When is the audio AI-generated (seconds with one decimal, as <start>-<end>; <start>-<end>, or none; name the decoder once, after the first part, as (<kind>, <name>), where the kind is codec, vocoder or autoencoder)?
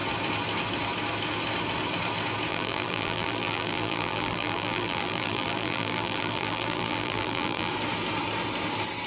2.5-7.7 (vocoder, BigVGAN v2)